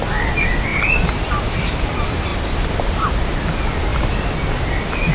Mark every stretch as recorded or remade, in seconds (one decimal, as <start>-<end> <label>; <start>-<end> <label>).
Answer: 0.0-5.1 recorded